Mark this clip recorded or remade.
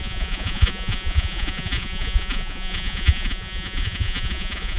remade